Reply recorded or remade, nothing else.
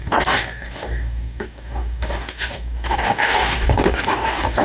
remade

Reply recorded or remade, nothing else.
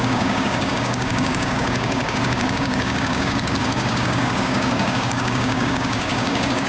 remade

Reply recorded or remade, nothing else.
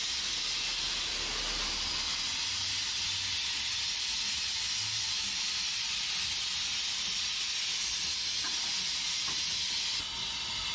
recorded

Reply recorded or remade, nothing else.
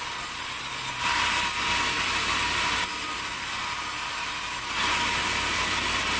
recorded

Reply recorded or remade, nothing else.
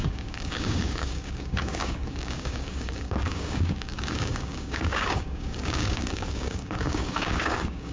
remade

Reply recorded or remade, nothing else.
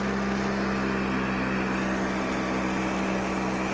recorded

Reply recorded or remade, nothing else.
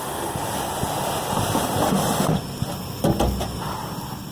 recorded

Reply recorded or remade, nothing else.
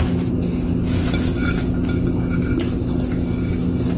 recorded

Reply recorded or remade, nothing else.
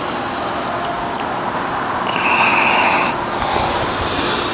recorded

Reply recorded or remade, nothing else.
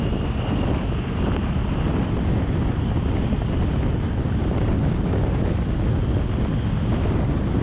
recorded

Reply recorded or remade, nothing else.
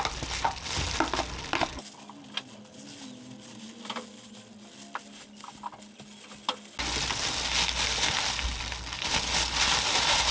recorded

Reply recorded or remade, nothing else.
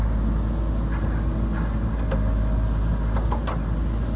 recorded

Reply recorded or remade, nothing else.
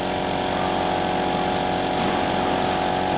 recorded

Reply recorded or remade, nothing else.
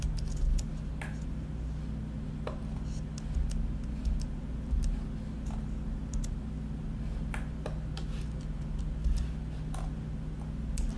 recorded